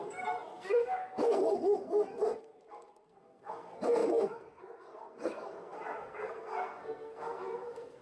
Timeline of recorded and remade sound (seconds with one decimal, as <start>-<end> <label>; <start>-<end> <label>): 0.0-8.0 remade